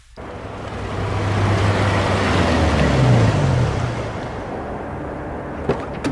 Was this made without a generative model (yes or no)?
yes